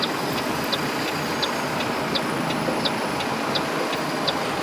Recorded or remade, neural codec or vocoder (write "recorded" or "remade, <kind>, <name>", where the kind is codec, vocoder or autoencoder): recorded